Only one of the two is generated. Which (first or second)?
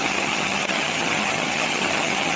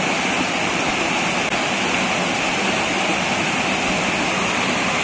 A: first